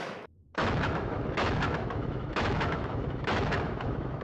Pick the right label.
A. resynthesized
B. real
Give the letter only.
A